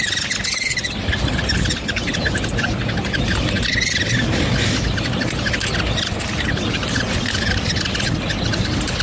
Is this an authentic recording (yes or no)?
yes